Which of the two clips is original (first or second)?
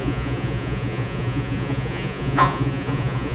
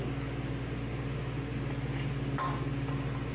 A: second